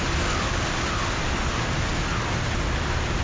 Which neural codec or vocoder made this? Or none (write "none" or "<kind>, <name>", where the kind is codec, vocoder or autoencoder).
none